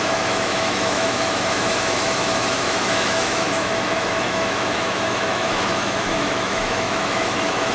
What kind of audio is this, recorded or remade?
remade